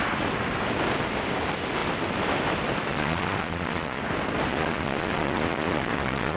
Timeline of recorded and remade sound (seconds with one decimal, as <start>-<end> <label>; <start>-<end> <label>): 0.0-2.9 recorded; 2.9-4.0 remade; 4.0-4.5 recorded; 4.5-6.4 remade